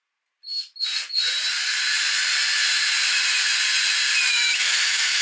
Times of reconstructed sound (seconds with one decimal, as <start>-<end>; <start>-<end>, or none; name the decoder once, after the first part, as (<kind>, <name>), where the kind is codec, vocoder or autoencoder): 4.3-5.2 (autoencoder, DAC-VAE)